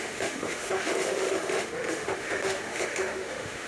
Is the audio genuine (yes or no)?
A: no